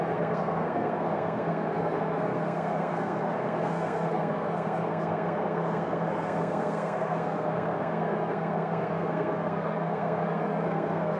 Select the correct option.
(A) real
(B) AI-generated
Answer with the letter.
B